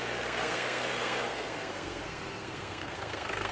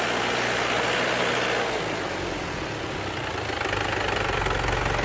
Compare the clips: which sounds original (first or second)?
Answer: second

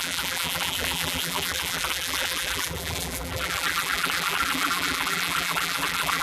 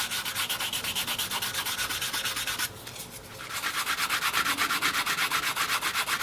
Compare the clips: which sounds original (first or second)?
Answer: second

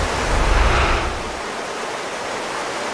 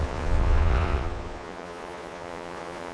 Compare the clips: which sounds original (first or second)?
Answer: first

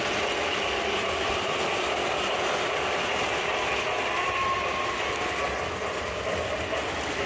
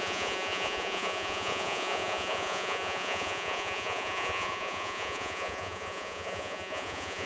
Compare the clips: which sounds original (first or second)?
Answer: first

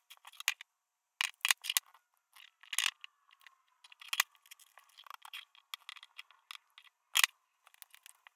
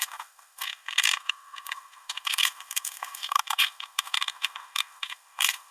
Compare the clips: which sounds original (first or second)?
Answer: first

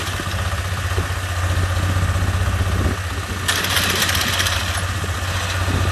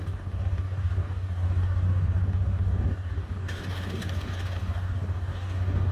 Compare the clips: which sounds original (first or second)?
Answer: first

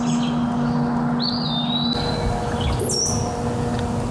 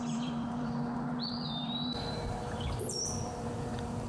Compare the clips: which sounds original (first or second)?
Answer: first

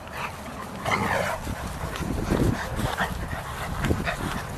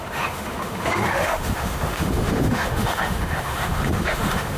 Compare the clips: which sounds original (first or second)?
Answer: first